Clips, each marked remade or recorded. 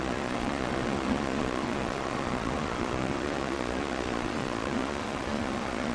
remade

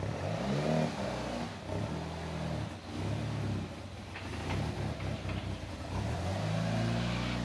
recorded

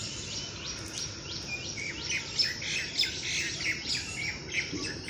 recorded